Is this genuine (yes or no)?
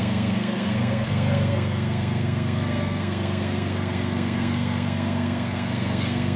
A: no